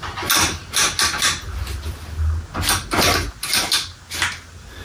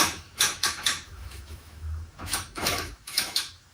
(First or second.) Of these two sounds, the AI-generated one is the second